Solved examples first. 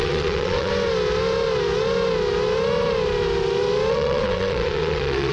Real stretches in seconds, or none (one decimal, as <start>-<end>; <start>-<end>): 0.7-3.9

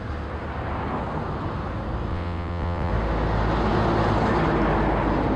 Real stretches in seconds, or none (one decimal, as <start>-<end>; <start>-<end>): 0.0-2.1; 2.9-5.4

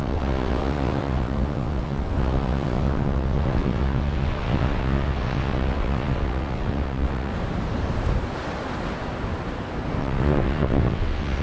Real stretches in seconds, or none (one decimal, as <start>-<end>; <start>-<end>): 7.3-10.0